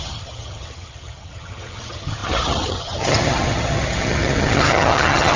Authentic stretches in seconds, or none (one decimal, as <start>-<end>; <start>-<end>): none